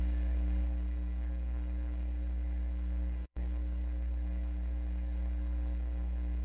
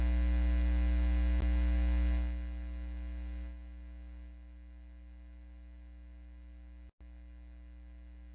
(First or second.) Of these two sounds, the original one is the second